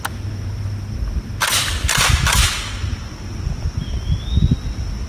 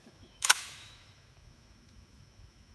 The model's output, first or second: second